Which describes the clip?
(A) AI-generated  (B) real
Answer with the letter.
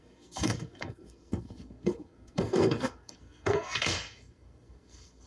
A